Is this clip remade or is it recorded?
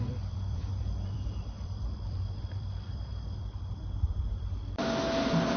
remade